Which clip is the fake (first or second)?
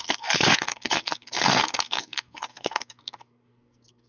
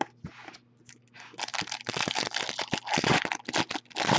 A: first